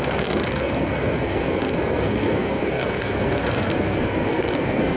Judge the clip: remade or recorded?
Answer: remade